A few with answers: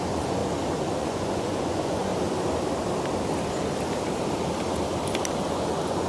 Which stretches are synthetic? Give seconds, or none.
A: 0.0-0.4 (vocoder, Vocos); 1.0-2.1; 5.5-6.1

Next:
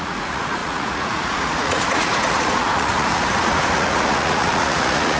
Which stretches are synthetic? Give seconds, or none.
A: 0.0-5.2 (vocoder, Vocos)

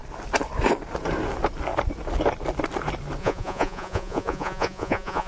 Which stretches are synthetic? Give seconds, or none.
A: 3.2-5.3 (vocoder, Vocos)